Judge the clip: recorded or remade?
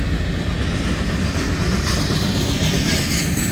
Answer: recorded